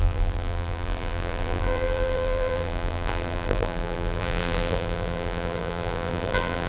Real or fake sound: fake